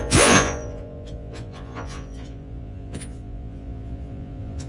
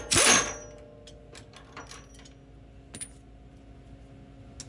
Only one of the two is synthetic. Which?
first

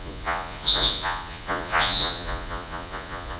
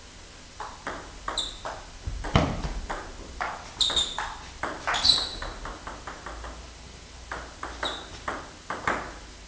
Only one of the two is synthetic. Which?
first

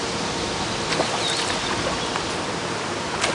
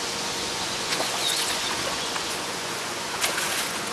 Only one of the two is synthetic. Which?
second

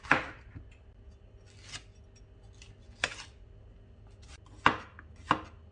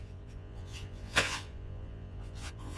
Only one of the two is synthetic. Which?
second